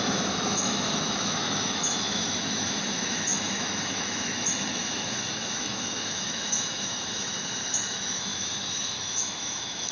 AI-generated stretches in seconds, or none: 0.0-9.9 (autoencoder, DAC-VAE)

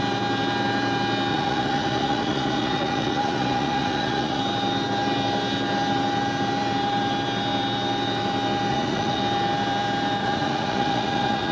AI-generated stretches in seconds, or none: 1.3-4.4 (vocoder, Vocos); 8.7-9.2; 10.2-11.5

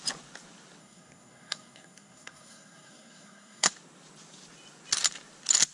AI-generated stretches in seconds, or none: 0.8-3.7 (codec, SNAC)

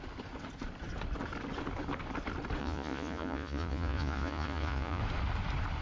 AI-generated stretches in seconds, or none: 2.6-5.0 (vocoder, Vocos)

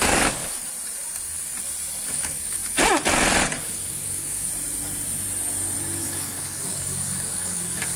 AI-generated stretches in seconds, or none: 0.0-0.4 (codec, DAC); 2.1-2.6; 3.6-4.5; 6.0-8.0

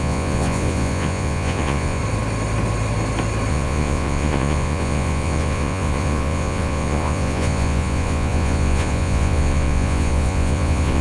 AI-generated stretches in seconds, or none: 0.0-2.0 (vocoder, Vocos); 3.5-11.0